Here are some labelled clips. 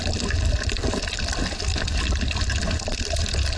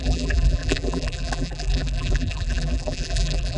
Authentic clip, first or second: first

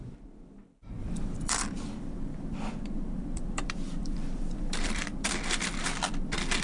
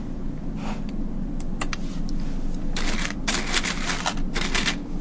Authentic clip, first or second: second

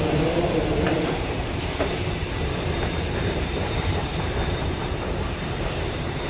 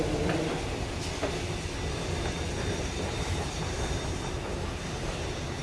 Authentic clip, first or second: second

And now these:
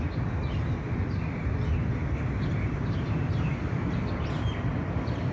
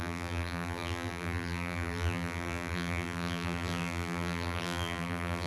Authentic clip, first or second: first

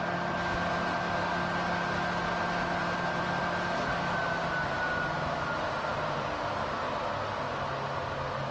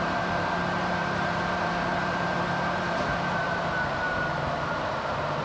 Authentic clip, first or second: first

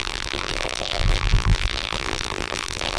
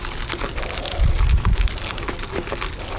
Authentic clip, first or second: second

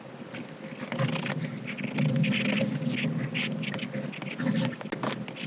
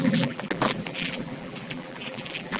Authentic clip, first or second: first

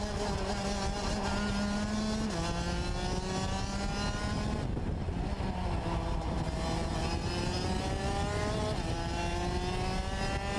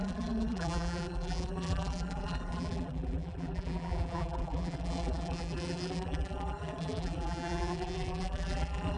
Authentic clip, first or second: first